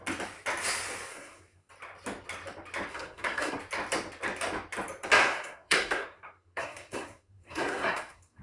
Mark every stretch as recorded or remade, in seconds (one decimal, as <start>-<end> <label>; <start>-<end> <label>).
0.0-1.1 recorded; 1.1-1.7 remade; 1.7-2.9 recorded; 2.9-3.6 remade; 3.6-5.2 recorded; 5.2-8.4 remade